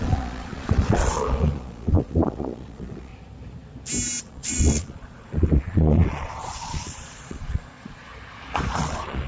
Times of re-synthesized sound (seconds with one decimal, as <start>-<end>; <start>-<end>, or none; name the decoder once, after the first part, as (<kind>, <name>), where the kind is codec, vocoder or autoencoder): 0.0-3.1 (vocoder, Vocos); 4.2-8.1; 8.8-9.3

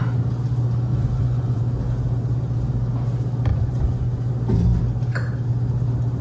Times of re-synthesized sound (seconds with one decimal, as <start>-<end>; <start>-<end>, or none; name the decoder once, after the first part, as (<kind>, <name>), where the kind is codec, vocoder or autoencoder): 0.9-1.6 (vocoder, Vocos); 3.5-4.3

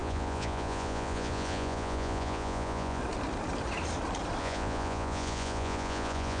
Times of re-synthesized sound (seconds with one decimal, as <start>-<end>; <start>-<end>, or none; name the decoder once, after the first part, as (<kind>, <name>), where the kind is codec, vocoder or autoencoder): 0.0-3.0 (vocoder, Vocos); 4.4-6.4

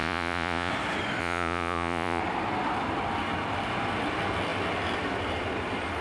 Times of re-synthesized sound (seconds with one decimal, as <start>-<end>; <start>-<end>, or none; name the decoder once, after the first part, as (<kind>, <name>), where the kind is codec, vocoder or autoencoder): 0.0-0.7 (vocoder, Vocos); 1.2-2.2

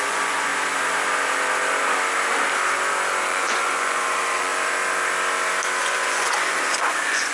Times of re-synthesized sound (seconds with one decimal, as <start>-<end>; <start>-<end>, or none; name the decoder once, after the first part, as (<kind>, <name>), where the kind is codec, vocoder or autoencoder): 0.0-0.5 (vocoder, Vocos); 3.3-4.5; 5.8-7.3